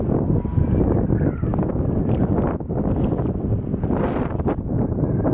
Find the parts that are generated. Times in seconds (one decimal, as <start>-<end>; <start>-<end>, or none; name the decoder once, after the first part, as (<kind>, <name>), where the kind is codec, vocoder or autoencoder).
none